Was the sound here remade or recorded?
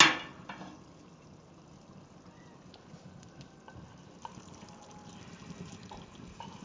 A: recorded